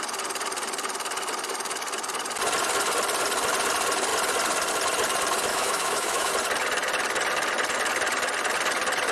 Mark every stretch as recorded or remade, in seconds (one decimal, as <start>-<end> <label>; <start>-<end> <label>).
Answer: 0.0-5.5 recorded; 5.5-6.3 remade; 6.3-9.1 recorded